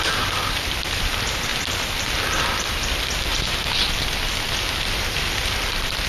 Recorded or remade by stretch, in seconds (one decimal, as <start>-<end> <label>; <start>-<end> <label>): 0.0-3.3 remade; 3.3-4.8 recorded; 4.8-6.1 remade